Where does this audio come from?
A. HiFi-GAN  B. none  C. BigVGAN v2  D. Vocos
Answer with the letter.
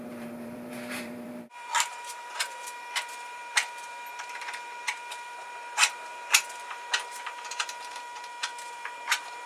C